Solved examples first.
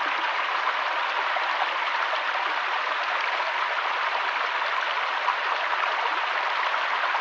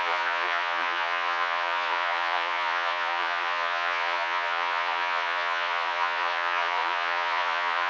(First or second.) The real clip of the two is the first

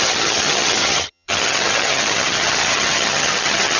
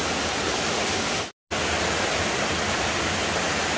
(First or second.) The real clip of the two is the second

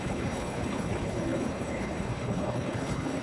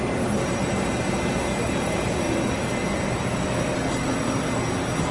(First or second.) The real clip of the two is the second